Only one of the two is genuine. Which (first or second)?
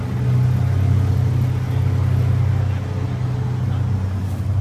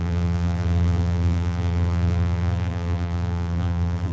first